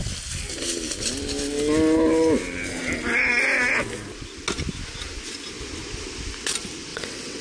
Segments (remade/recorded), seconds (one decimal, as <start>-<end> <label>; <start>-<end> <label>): 0.0-6.9 recorded; 6.9-7.4 remade